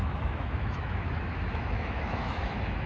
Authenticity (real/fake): fake